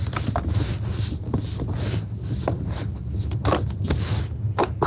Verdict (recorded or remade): recorded